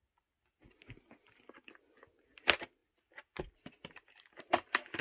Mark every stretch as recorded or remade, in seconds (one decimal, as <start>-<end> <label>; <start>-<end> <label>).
0.0-5.0 recorded